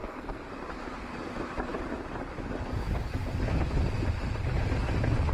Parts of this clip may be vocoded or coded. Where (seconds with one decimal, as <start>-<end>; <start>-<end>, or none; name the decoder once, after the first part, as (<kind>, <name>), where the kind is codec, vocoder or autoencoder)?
0.0-0.5 (codec, SNAC)